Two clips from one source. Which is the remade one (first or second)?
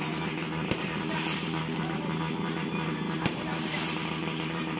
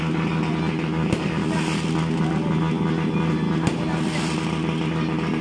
first